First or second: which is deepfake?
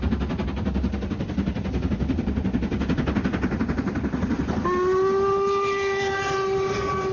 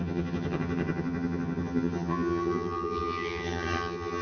second